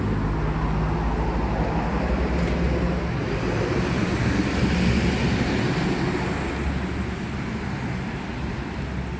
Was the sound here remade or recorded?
recorded